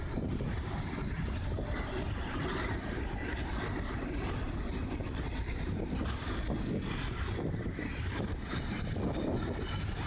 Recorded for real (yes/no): no